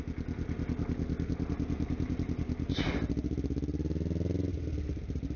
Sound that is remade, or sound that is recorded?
recorded